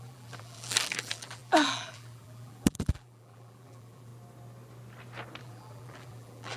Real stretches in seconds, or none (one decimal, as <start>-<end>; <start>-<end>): 4.1-5.4